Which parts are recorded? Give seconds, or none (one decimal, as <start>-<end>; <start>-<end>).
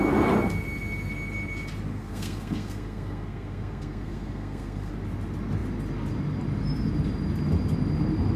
0.0-1.9; 4.9-8.4